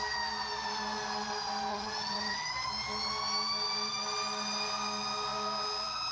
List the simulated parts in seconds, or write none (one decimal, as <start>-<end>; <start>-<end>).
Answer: 1.7-2.5

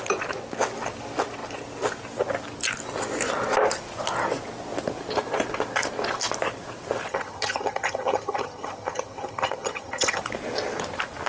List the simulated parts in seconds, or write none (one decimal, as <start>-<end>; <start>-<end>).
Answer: 7.1-10.2